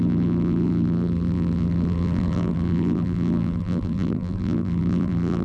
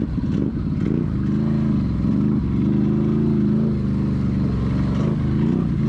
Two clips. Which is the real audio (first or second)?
second